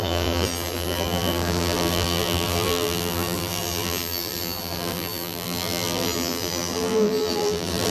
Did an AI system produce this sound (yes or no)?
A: yes